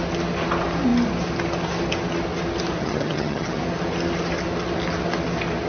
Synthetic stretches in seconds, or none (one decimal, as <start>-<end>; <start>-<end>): 2.8-3.6